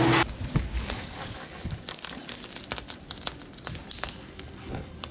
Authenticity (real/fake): real